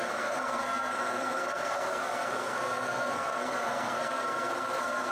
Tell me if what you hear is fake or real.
fake